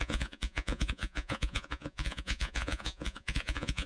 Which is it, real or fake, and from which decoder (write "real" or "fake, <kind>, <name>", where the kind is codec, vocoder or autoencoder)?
fake, vocoder, Vocos